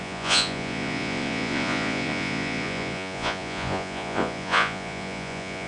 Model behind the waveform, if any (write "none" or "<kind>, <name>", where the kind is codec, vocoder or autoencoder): vocoder, Vocos